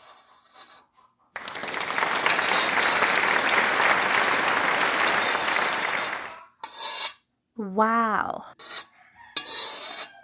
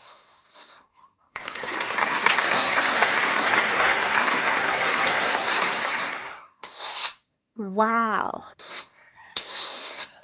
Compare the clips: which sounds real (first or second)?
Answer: first